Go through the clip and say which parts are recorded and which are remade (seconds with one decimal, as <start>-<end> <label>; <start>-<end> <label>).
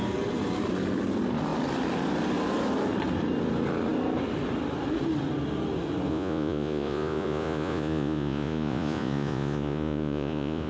0.0-6.1 recorded; 6.1-10.7 remade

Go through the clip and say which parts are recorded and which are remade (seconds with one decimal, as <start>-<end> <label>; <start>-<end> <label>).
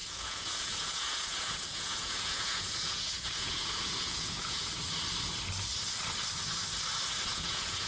0.0-4.7 remade; 4.7-7.3 recorded; 7.3-7.9 remade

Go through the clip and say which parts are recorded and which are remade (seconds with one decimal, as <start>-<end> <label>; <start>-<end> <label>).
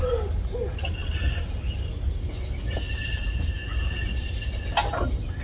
0.0-5.4 recorded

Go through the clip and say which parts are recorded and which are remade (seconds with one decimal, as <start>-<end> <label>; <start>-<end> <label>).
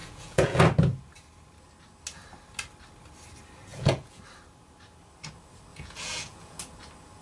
0.0-0.6 remade; 0.6-3.7 recorded; 3.7-4.2 remade; 4.2-5.7 recorded; 5.7-6.6 remade; 6.6-7.2 recorded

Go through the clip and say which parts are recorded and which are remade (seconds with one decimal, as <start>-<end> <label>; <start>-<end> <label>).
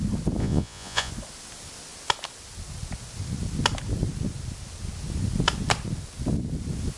0.0-0.4 recorded; 0.4-1.1 remade; 1.1-7.0 recorded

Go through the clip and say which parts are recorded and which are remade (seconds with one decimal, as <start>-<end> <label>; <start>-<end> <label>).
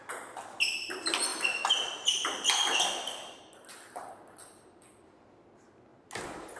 0.0-6.6 recorded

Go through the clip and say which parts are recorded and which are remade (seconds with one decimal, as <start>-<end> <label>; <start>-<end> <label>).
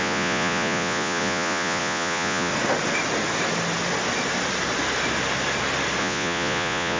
0.0-2.5 remade; 2.5-6.0 recorded; 6.0-7.0 remade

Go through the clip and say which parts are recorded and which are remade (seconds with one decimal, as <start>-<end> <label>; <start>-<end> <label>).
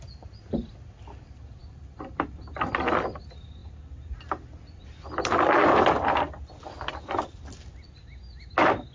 0.0-8.9 recorded